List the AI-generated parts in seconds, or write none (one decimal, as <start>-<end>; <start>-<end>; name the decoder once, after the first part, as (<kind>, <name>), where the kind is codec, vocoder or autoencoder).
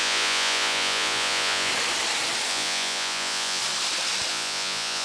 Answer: 0.0-1.7 (vocoder, Vocos); 2.5-3.6; 4.3-5.0